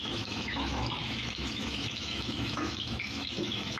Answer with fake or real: fake